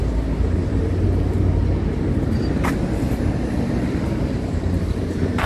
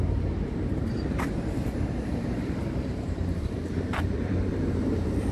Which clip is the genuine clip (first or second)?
first